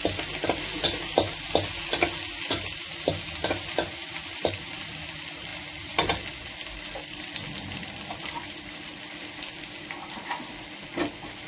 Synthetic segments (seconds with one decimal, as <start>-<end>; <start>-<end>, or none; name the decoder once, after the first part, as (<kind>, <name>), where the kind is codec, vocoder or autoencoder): none